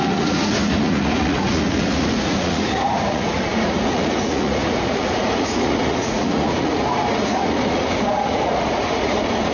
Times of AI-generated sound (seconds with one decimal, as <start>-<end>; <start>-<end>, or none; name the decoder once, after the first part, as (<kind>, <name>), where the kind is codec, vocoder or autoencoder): 0.0-9.5 (vocoder, Vocos)